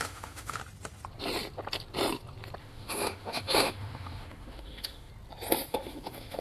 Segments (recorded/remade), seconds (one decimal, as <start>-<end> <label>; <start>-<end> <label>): 0.0-0.6 remade; 0.6-2.6 recorded; 2.6-5.1 remade; 5.1-5.7 recorded; 5.7-6.4 remade